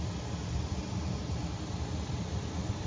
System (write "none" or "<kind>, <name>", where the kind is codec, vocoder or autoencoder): none